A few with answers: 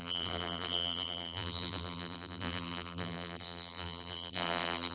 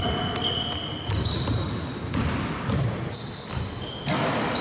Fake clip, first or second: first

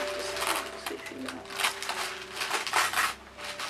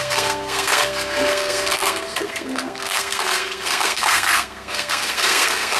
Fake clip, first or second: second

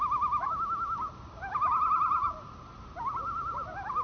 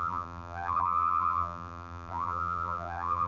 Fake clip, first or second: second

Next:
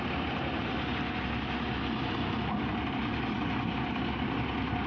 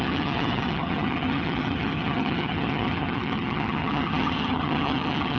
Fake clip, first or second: second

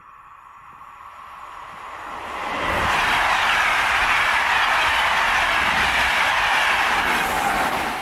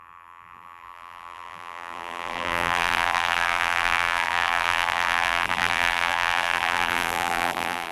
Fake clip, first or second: second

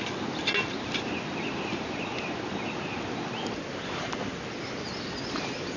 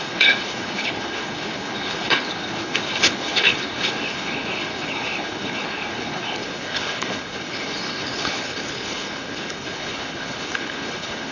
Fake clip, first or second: second